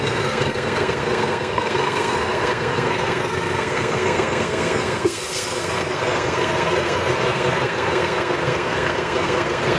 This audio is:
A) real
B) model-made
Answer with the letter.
B